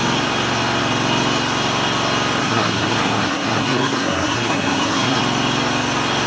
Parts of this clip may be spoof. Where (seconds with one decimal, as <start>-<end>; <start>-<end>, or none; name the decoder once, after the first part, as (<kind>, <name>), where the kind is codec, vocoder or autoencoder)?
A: 2.4-5.2 (codec, SNAC)

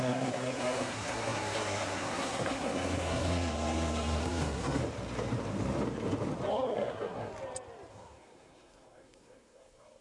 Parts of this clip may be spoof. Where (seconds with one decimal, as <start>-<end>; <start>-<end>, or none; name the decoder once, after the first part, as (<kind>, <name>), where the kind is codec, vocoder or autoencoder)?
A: 0.0-4.8 (codec, SNAC); 6.5-7.3; 7.9-10.0

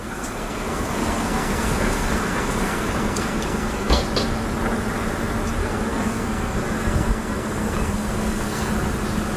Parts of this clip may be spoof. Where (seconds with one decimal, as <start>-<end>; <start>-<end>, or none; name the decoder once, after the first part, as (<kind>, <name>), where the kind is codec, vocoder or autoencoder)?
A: 0.0-4.0 (codec, SNAC); 5.6-8.7

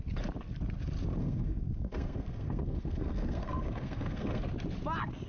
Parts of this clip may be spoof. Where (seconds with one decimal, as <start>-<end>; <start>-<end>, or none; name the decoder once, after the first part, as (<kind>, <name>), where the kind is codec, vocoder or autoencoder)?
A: 1.2-4.4 (codec, SNAC)